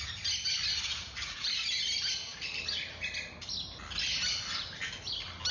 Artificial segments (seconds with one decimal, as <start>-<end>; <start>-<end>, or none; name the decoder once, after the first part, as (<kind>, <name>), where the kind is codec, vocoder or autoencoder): 1.0-1.7 (vocoder, Vocos)